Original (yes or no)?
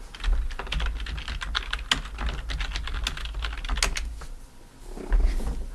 yes